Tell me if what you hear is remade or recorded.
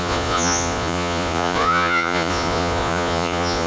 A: remade